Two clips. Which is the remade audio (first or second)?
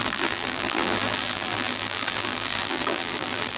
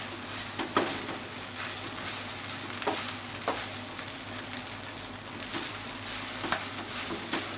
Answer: first